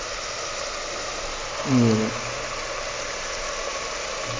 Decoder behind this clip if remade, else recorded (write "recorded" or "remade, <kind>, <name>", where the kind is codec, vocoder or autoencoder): recorded